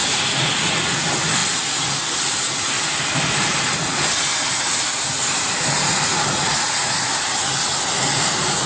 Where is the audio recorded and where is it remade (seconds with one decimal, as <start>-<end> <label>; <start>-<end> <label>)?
0.0-0.9 remade; 0.9-5.9 recorded; 5.9-7.1 remade; 7.1-8.7 recorded